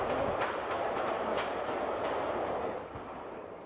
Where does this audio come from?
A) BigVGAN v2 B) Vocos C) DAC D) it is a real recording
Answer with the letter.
A